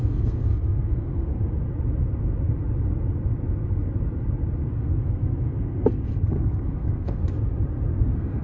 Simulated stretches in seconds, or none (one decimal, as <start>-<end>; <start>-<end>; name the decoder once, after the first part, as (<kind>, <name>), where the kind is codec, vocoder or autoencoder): 0.0-1.6 (codec, SNAC); 4.7-7.2; 8.0-8.4